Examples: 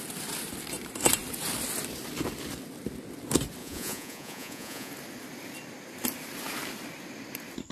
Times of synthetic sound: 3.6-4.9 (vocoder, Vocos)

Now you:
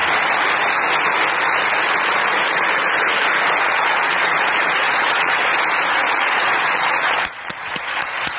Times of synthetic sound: 3.6-5.5 (vocoder, Vocos); 6.2-8.4

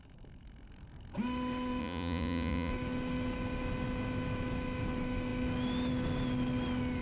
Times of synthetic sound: 1.8-2.7 (vocoder, Vocos)

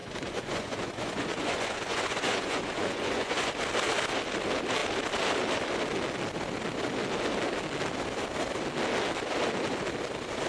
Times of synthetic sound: 0.0-3.5 (vocoder, Vocos)

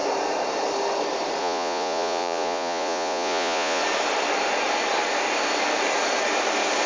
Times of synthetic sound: 1.4-3.8 (vocoder, Vocos)

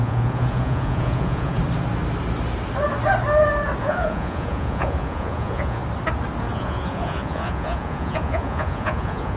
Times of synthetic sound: 0.0-1.6 (vocoder, Vocos); 3.8-5.8; 6.4-9.4

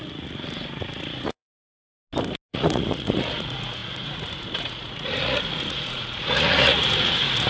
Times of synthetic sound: 0.0-1.5 (vocoder, Vocos); 2.5-7.5